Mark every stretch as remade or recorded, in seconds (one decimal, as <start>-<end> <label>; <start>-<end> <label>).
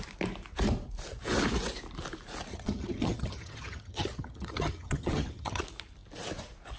0.0-2.5 recorded; 2.5-5.6 remade; 5.6-6.8 recorded